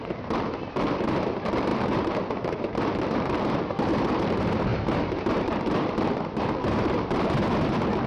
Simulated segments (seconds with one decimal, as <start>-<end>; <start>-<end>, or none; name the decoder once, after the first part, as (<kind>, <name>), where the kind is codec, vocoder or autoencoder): 0.0-8.1 (vocoder, BigVGAN v2)